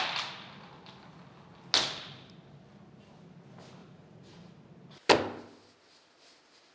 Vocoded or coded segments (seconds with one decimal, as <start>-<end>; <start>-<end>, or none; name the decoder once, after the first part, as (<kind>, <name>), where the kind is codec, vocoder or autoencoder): 3.8-4.5 (vocoder, Vocos)